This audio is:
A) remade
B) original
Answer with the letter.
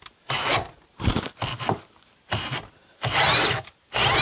A